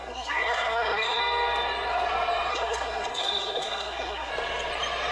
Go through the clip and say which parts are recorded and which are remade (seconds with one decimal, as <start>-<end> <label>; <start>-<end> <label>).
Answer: 0.0-1.2 remade; 1.2-2.5 recorded; 2.5-4.3 remade; 4.3-5.1 recorded